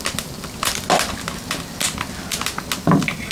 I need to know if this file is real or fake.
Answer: real